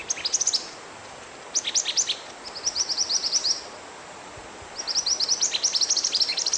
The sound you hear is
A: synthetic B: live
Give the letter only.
B